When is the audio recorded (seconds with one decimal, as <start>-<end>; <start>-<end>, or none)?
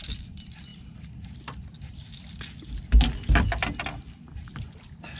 0.0-5.2